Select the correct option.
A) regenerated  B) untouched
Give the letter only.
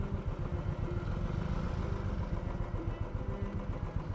B